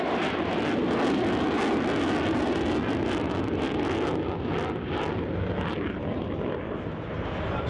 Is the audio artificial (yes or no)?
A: no